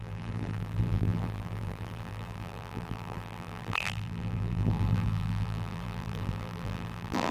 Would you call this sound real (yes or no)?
no